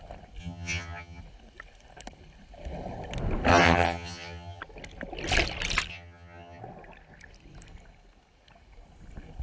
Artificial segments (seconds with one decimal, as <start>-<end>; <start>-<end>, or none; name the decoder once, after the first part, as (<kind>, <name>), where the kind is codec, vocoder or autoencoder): 0.4-1.2 (vocoder, HiFi-GAN); 3.5-4.6; 5.9-6.6